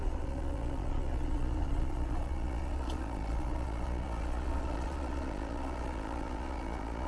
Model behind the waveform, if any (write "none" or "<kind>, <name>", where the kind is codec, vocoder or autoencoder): vocoder, Vocos